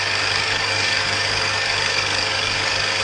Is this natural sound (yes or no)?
no